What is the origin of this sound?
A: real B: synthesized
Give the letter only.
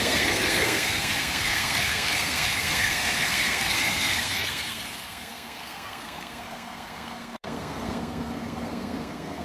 B